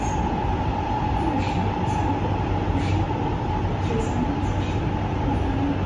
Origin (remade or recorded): recorded